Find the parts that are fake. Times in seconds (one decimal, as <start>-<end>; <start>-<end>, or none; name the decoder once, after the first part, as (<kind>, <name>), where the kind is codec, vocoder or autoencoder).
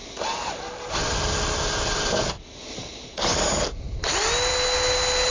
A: none